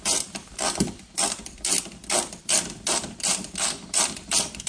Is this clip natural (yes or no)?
no